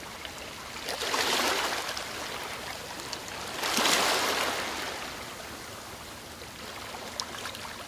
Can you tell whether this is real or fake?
real